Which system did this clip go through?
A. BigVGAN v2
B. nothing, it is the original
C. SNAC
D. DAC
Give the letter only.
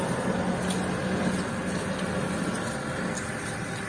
B